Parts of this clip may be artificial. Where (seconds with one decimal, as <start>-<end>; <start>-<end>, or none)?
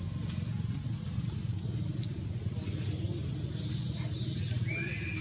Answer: none